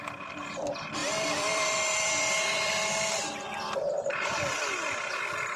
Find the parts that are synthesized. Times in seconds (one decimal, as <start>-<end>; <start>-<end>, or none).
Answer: 1.0-4.4